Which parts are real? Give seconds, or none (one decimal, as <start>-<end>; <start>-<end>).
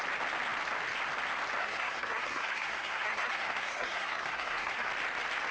0.0-1.6; 4.9-5.5